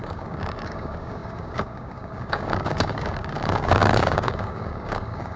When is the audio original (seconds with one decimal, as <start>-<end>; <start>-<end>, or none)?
none